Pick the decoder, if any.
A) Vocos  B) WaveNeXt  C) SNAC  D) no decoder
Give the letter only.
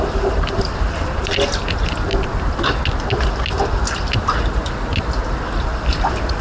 D